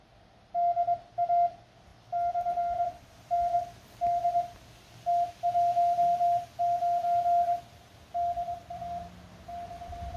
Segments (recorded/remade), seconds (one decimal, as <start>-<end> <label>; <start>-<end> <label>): 0.0-10.2 recorded